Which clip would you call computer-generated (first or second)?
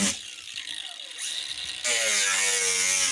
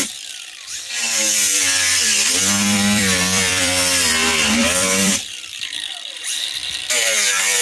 second